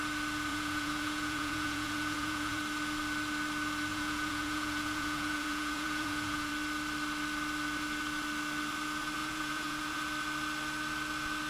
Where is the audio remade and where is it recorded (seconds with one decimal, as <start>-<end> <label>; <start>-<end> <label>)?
0.0-0.5 recorded; 0.5-2.6 remade; 2.6-3.9 recorded; 3.9-6.5 remade; 6.5-9.2 recorded; 9.2-10.0 remade; 10.0-11.5 recorded